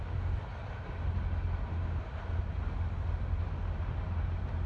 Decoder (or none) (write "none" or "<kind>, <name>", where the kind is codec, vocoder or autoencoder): none